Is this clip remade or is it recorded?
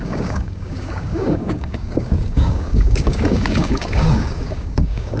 remade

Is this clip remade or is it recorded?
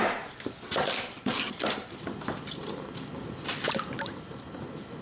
remade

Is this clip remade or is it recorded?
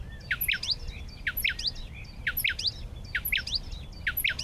recorded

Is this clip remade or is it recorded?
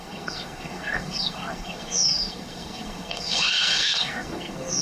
remade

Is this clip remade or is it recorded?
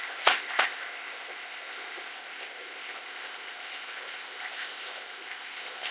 remade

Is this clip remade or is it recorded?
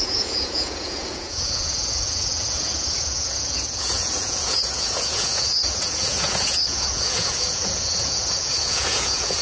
remade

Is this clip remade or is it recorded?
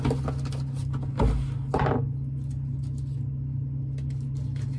recorded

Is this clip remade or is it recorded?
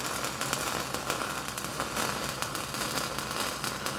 recorded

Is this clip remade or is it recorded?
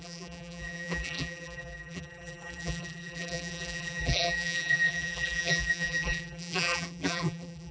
remade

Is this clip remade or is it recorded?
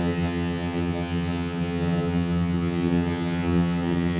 remade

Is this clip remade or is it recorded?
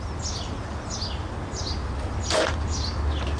recorded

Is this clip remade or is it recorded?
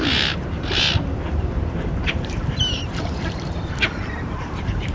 remade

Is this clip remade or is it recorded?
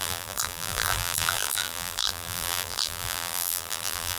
remade